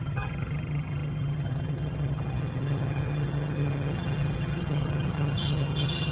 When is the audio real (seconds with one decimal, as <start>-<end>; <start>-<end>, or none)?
none